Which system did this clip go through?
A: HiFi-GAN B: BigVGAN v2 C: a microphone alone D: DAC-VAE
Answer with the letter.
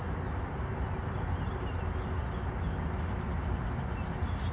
C